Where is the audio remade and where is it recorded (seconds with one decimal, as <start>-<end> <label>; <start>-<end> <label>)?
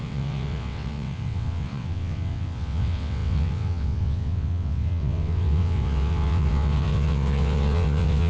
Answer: 0.0-8.3 remade